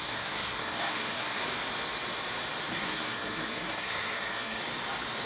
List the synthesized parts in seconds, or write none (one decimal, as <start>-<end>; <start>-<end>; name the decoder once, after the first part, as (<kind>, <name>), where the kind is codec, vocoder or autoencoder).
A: 0.0-1.4 (codec, SNAC); 2.8-4.6